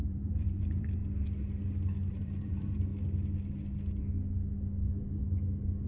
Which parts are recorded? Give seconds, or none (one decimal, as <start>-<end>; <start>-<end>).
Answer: 1.0-2.1; 2.9-5.9

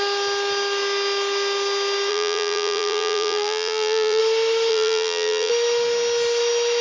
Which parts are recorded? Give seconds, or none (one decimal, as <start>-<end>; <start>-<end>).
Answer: 0.0-2.1; 4.2-4.7; 5.5-6.8

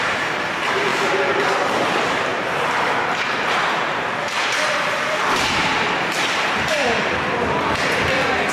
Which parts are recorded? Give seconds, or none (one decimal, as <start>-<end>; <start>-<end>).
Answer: none

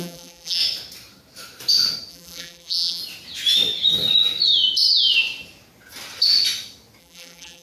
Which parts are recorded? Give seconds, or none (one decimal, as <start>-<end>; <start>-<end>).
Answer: 0.6-2.1; 3.0-7.0

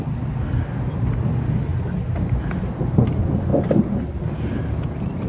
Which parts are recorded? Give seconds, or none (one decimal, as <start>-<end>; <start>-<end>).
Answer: 0.0-1.7; 2.6-5.3

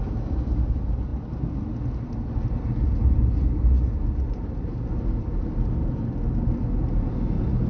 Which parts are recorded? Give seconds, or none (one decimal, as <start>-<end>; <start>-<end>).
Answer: 0.0-7.7

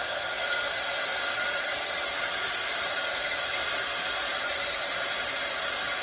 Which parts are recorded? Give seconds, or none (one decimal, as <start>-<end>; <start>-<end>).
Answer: 0.0-1.1; 4.4-6.0